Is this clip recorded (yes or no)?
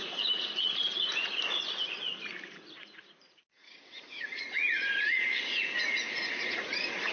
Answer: no